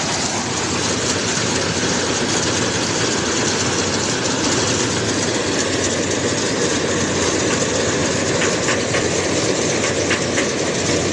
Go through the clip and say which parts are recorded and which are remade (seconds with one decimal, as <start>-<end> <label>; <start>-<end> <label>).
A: 0.0-11.1 recorded